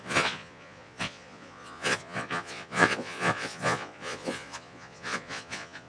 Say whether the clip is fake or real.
fake